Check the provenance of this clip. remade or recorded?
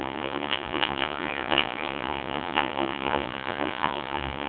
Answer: remade